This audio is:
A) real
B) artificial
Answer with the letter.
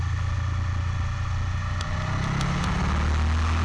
A